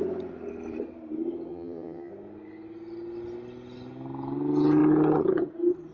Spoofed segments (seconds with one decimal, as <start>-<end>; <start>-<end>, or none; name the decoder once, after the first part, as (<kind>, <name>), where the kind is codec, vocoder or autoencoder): 1.5-2.1 (vocoder, HiFi-GAN)